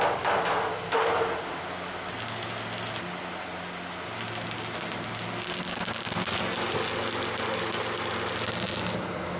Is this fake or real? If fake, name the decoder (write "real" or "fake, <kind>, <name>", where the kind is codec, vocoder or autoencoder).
real